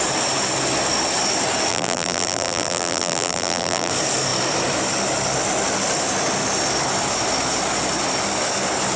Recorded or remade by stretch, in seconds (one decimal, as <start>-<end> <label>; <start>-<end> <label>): 0.0-1.7 recorded; 1.7-3.9 remade; 3.9-9.0 recorded